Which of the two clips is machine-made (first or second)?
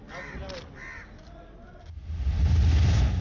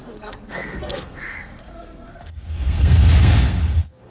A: second